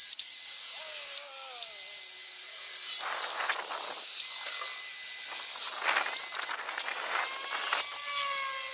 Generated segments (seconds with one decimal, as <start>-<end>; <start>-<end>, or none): 0.0-0.8; 2.2-2.7